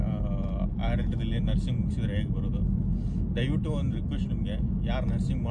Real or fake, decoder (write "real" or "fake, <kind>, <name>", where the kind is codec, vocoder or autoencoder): real